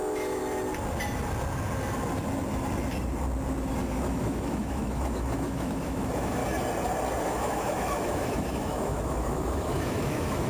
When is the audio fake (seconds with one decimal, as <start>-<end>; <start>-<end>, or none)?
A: 0.0-0.4; 3.8-6.4; 7.2-10.5